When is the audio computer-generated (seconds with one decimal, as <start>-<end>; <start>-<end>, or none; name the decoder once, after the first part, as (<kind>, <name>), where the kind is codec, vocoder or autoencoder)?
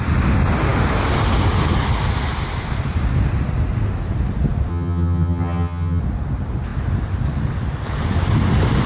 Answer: 4.7-6.0 (vocoder, HiFi-GAN)